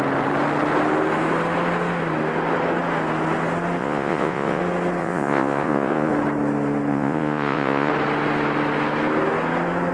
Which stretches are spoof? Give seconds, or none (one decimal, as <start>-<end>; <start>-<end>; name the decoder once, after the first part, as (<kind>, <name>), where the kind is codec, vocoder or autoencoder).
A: 3.8-4.6 (vocoder, Vocos); 5.0-6.1; 6.9-7.9